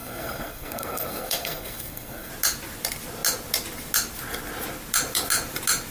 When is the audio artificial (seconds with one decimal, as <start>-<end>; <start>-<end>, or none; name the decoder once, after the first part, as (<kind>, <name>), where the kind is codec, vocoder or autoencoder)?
0.0-2.3 (codec, SNAC)